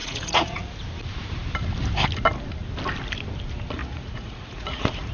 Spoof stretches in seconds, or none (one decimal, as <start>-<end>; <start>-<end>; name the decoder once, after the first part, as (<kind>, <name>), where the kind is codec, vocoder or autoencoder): 0.0-0.6 (vocoder, Vocos); 3.8-5.1